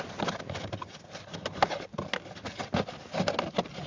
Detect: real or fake real